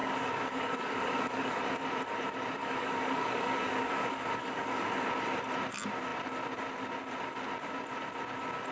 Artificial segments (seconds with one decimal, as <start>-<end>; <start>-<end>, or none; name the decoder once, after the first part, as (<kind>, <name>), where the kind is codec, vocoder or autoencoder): 0.0-1.6 (codec, DAC); 2.6-5.1